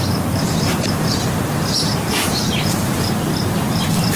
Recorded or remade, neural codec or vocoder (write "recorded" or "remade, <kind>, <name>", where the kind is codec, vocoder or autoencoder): remade, vocoder, BigVGAN v2